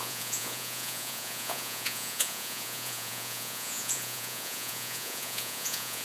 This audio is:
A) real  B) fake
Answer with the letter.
B